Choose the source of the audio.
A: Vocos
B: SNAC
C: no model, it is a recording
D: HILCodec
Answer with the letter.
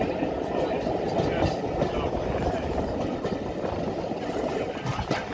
C